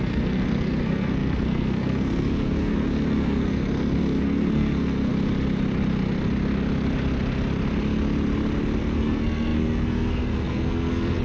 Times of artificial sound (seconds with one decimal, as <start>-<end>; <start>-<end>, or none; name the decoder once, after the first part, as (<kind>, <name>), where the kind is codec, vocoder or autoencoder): 0.0-5.1 (codec, SNAC); 8.8-11.2